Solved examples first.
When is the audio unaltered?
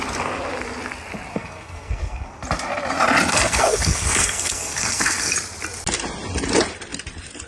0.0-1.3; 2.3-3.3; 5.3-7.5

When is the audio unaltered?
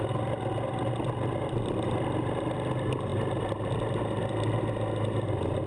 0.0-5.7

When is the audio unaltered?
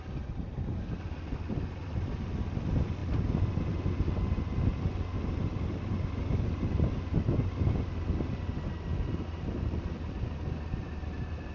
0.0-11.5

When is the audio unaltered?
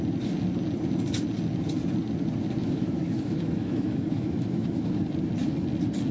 0.0-2.6; 5.1-6.1